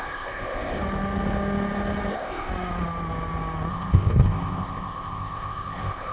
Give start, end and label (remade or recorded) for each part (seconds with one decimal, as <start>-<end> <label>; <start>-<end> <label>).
0.0-0.8 remade; 0.8-2.1 recorded; 2.1-2.5 remade; 2.5-3.7 recorded; 3.7-6.1 remade

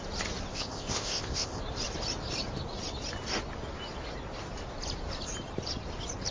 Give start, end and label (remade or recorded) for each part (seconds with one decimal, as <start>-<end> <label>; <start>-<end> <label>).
0.0-0.5 recorded; 0.5-1.6 remade; 1.6-6.3 recorded

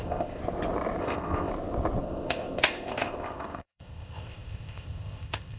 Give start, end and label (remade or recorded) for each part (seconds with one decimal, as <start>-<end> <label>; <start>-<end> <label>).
0.0-0.4 remade; 0.4-1.0 recorded; 1.0-1.5 remade; 1.5-2.0 recorded; 2.0-5.6 remade

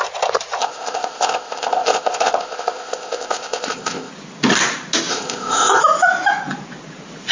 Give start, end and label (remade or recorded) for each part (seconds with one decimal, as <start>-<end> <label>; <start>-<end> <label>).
0.0-0.6 recorded; 0.6-4.1 remade; 4.1-5.1 recorded; 5.1-5.8 remade; 5.8-7.3 recorded

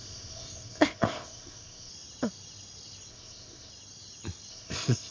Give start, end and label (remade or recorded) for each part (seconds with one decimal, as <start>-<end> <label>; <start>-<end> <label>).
0.0-1.9 remade; 1.9-3.1 recorded; 3.1-3.7 remade; 3.7-4.5 recorded; 4.5-5.1 remade

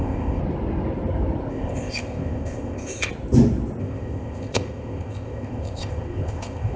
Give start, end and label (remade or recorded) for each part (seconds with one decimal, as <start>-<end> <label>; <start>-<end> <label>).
0.0-0.4 remade; 0.4-1.5 recorded; 1.5-3.1 remade; 3.1-3.8 recorded; 3.8-6.8 remade

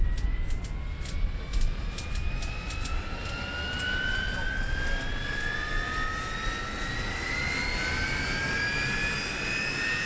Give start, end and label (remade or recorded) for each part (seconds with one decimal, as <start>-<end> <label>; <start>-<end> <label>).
0.0-10.1 recorded